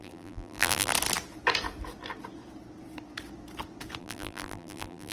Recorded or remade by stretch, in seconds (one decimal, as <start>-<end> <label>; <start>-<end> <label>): 0.0-0.9 remade; 0.9-4.0 recorded; 4.0-5.1 remade